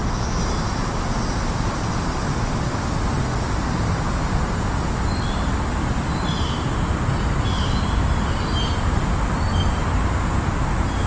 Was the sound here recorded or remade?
recorded